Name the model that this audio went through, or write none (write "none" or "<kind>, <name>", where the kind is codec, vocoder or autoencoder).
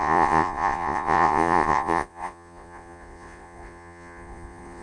vocoder, Vocos